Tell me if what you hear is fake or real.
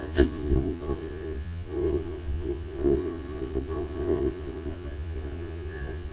fake